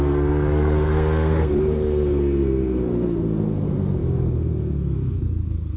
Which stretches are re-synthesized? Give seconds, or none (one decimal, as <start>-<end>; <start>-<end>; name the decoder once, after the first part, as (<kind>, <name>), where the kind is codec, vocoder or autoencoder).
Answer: 0.0-5.8 (codec, SNAC)